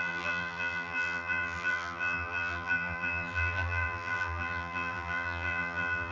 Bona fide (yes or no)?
no